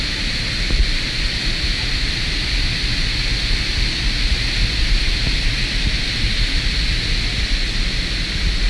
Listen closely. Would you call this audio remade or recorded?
recorded